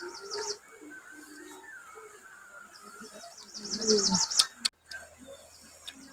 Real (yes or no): yes